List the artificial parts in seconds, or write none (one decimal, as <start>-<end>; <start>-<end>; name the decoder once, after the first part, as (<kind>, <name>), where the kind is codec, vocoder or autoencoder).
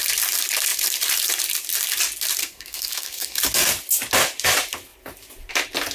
2.4-3.4 (codec, SNAC)